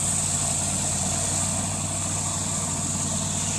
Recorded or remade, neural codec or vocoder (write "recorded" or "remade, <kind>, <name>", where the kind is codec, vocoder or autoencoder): recorded